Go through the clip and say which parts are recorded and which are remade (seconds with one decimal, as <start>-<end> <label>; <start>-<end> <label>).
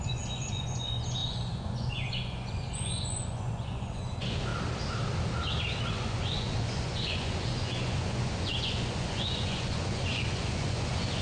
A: 0.0-4.5 remade; 4.5-5.9 recorded; 5.9-11.2 remade